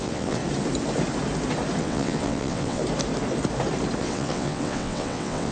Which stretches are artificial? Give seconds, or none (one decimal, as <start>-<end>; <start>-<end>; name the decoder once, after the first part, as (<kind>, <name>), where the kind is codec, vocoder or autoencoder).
0.0-0.4 (vocoder, WaveNeXt); 1.8-2.8; 4.0-5.5